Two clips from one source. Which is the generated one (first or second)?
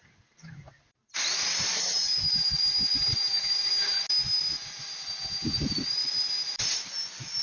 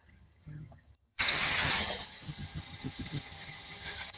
second